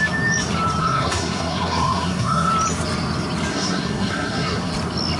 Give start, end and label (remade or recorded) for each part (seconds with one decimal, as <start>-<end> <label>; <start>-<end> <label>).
0.0-0.8 recorded; 0.8-2.5 remade; 2.5-3.5 recorded; 3.5-4.7 remade; 4.7-5.2 recorded